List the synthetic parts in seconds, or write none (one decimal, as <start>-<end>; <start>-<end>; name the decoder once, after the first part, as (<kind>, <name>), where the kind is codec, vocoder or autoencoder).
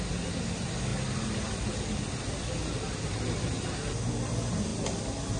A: 4.7-5.4 (vocoder, BigVGAN v2)